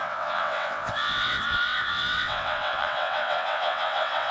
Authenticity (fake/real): fake